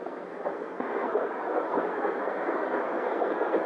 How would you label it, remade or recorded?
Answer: remade